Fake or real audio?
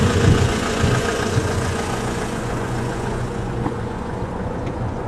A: fake